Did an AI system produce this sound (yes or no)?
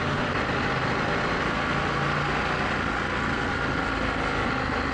no